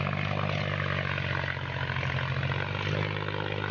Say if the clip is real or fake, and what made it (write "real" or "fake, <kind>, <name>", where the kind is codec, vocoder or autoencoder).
real